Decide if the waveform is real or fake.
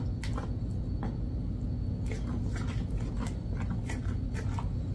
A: real